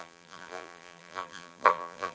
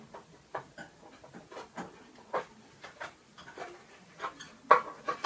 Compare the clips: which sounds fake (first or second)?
first